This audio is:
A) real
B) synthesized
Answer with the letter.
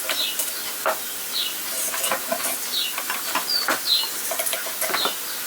B